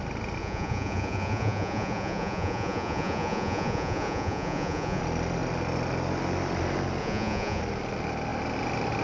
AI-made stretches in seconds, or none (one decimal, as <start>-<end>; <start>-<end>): 0.4-5.0; 7.0-7.6